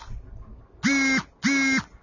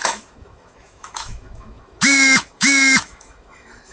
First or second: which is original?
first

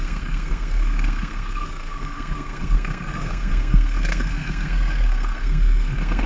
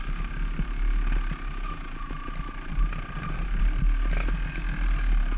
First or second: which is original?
second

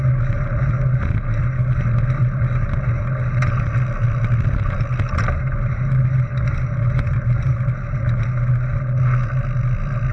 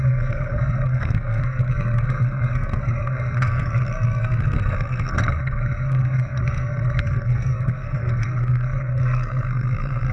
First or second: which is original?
first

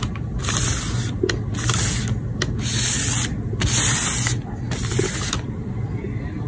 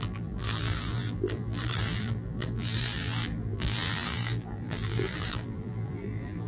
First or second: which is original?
first